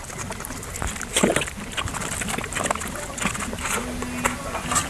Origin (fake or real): real